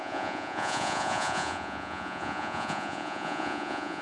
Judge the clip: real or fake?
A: fake